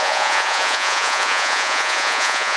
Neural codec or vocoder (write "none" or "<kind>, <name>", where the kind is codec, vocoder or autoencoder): vocoder, Vocos